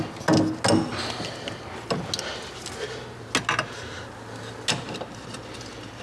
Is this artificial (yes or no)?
no